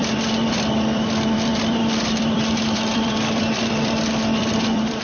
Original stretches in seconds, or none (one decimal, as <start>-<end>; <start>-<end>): none